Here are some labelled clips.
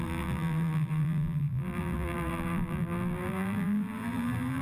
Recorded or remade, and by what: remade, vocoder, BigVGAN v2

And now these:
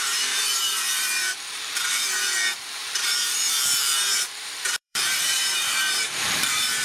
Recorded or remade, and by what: remade, vocoder, BigVGAN v2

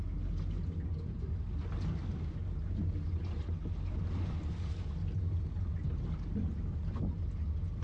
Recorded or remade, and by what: recorded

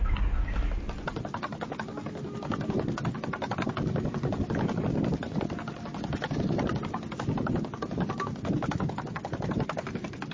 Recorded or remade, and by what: recorded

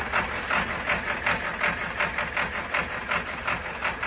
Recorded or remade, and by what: recorded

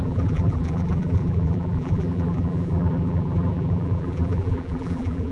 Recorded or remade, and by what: remade, vocoder, BigVGAN v2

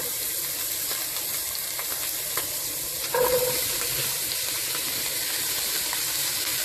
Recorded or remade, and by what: remade, vocoder, BigVGAN v2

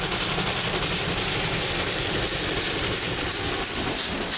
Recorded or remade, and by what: recorded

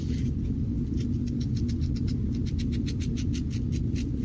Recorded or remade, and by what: recorded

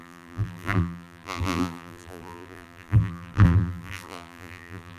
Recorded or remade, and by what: remade, vocoder, BigVGAN v2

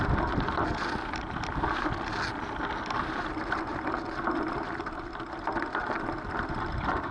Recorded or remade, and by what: recorded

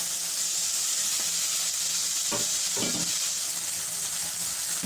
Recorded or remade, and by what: recorded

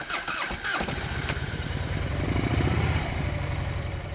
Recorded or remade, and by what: remade, vocoder, BigVGAN v2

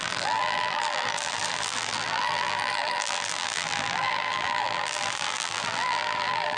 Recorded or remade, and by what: remade, vocoder, BigVGAN v2